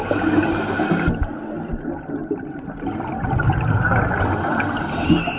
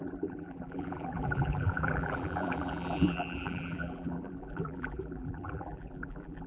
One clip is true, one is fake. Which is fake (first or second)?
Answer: second